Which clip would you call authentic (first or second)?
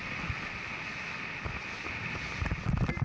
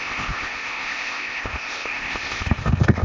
first